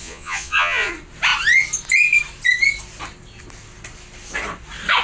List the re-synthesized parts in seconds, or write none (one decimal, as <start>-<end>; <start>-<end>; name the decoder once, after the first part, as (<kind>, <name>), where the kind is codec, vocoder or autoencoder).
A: 0.0-0.9 (vocoder, Vocos)